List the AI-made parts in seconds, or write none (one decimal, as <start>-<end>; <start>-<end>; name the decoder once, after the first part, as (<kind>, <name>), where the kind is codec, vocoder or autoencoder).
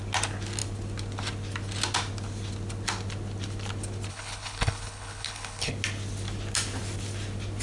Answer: 4.1-5.7 (codec, HILCodec)